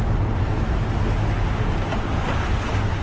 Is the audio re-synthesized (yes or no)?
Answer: no